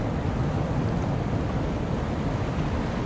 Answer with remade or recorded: recorded